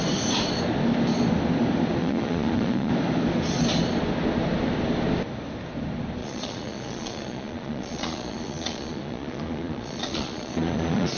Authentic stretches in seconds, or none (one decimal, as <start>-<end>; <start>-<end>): 0.0-2.0; 2.9-6.2